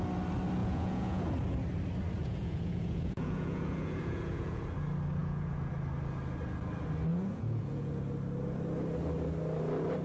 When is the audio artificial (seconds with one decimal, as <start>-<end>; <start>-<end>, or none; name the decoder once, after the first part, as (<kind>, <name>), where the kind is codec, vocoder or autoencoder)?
0.6-1.3 (vocoder, Vocos); 2.2-4.6; 5.2-5.7; 7.1-7.9